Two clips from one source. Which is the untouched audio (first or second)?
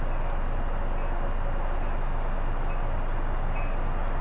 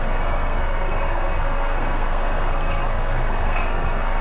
first